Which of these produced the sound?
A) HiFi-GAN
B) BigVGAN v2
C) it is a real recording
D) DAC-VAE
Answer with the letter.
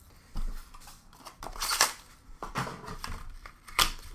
B